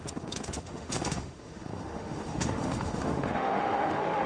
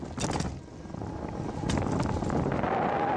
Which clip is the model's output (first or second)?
first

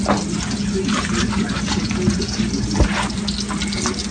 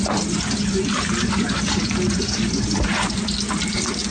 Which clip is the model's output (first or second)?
second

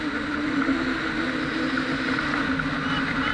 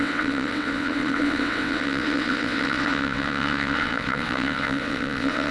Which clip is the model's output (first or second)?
second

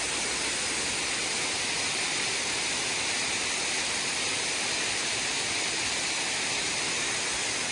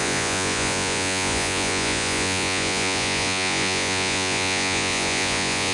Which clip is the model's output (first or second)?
second